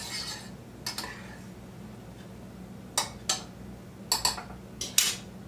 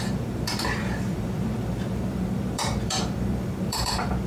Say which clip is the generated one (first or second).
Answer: second